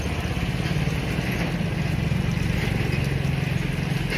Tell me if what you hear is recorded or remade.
recorded